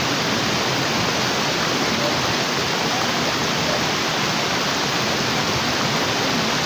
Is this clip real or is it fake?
real